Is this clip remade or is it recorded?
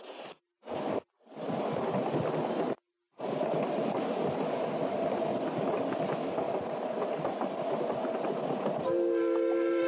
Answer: recorded